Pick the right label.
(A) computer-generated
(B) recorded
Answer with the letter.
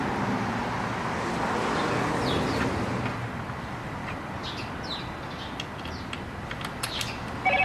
B